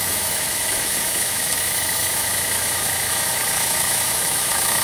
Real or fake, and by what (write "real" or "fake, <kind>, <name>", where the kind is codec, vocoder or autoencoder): fake, autoencoder, DAC-VAE